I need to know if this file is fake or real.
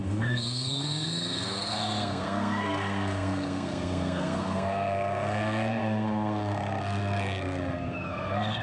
fake